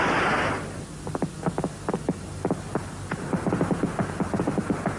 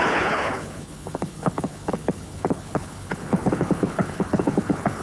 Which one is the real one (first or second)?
first